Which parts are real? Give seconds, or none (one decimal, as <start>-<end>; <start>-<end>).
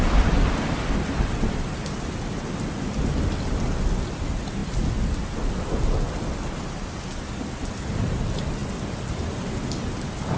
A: 0.0-10.4